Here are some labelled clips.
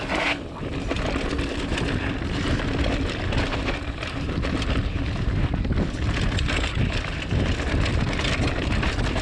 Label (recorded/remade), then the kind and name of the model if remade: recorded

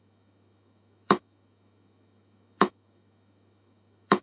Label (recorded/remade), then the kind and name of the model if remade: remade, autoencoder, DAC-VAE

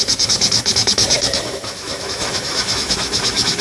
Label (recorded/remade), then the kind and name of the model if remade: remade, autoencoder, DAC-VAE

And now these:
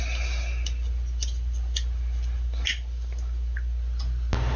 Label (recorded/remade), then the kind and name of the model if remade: recorded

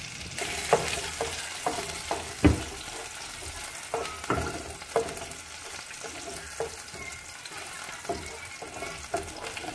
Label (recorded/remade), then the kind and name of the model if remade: recorded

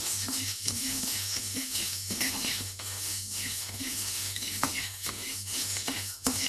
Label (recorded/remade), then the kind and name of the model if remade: remade, autoencoder, DAC-VAE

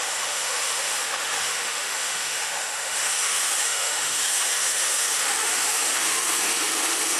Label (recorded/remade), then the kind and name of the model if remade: remade, autoencoder, DAC-VAE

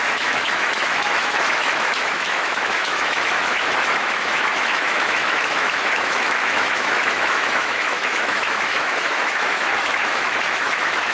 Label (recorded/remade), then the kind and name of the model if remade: remade, autoencoder, DAC-VAE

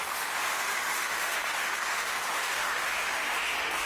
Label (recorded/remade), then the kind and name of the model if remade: remade, autoencoder, DAC-VAE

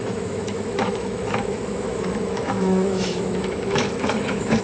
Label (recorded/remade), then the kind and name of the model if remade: remade, autoencoder, DAC-VAE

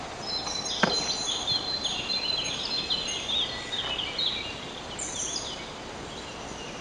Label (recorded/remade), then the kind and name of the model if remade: recorded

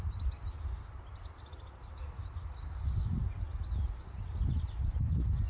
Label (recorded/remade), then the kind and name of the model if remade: recorded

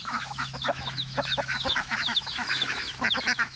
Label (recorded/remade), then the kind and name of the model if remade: remade, autoencoder, DAC-VAE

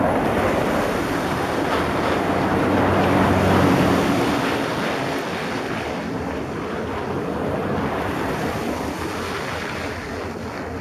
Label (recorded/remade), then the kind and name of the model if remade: recorded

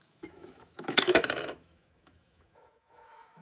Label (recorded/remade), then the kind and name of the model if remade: remade, autoencoder, DAC-VAE